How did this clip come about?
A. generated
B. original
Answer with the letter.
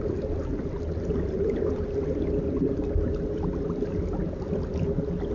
B